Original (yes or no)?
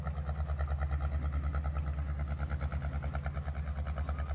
yes